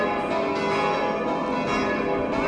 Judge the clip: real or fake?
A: real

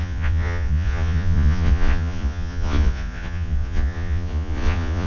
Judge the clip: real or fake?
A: fake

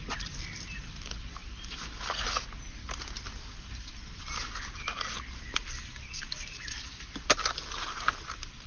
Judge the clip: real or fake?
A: real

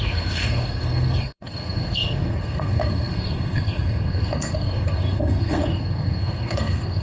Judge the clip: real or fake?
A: fake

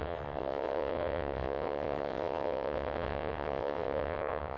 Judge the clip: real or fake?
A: fake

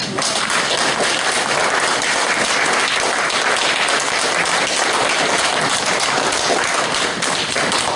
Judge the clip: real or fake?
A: real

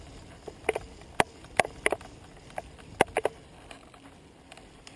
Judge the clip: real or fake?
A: real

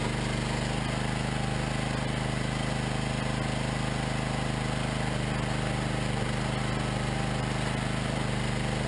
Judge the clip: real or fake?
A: real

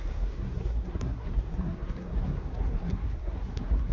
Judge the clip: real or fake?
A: fake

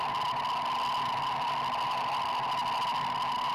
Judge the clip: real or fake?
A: real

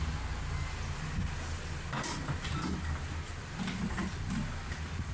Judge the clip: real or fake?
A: real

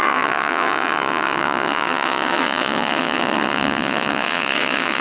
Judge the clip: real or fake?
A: fake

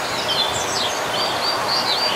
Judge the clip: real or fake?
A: real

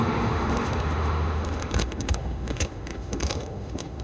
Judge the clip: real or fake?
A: fake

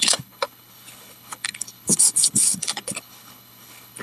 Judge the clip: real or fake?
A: fake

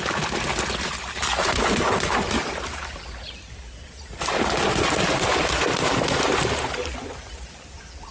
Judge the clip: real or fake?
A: real